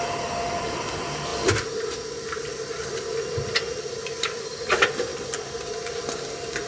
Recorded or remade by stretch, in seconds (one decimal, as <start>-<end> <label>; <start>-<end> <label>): 0.0-5.1 recorded; 5.1-6.0 remade; 6.0-6.7 recorded